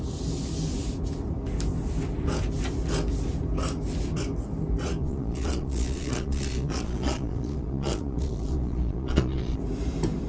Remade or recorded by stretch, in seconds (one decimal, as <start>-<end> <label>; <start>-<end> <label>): 0.0-5.0 recorded; 5.0-9.6 remade; 9.6-10.3 recorded